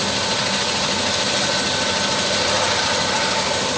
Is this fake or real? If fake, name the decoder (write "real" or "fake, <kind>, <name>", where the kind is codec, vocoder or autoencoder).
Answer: real